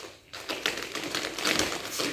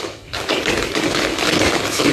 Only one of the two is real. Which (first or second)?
first